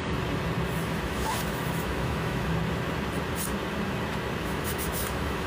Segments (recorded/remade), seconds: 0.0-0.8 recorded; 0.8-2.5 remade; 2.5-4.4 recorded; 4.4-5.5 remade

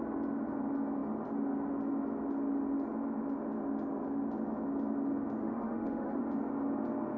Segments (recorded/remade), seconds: 0.0-5.4 recorded; 5.4-6.2 remade; 6.2-7.2 recorded

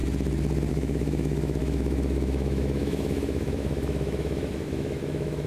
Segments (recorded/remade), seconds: 0.0-0.7 recorded; 0.7-5.5 remade

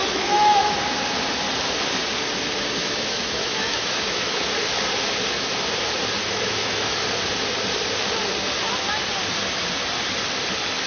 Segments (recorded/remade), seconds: 0.0-0.7 remade; 0.7-2.8 recorded; 2.8-4.4 remade; 4.4-6.2 recorded; 6.2-7.0 remade; 7.0-10.9 recorded